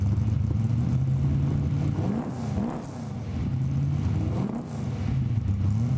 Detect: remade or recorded recorded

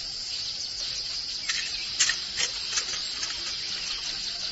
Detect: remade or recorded recorded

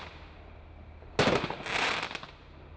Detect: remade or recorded recorded